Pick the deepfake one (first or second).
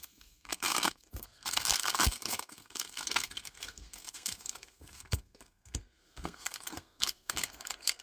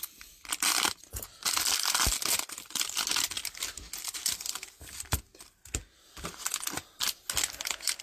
first